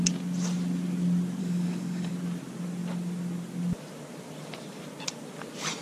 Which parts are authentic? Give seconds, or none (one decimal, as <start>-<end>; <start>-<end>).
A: 0.0-1.4; 2.1-5.8